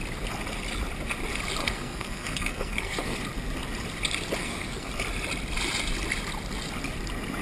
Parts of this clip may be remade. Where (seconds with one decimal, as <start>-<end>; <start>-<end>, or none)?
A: 1.6-3.2; 4.4-4.9